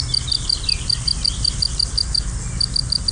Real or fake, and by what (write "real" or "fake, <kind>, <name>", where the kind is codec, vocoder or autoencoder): real